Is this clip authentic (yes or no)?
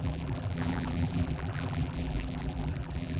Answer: no